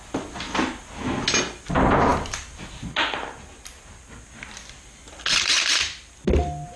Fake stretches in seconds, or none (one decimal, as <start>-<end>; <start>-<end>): none